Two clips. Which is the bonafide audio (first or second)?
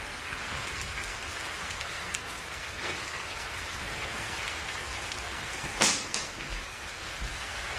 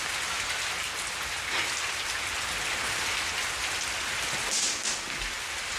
second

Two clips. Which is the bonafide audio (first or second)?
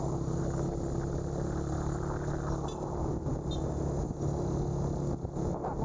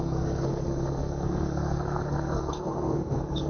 first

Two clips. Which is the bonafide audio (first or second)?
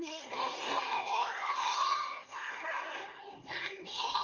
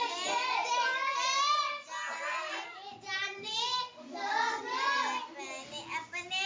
second